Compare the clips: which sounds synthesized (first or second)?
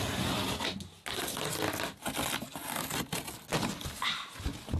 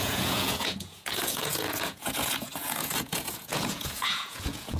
second